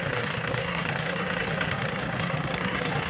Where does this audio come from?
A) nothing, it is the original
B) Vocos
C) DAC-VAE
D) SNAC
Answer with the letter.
D